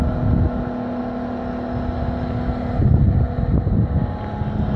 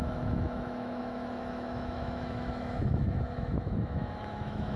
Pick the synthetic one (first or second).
second